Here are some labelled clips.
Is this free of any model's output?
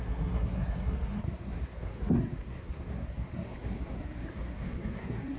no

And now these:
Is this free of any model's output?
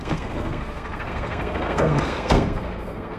no